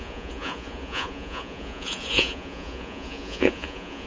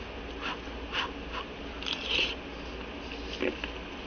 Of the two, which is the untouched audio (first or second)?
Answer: second